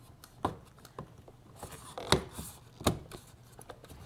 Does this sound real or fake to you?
real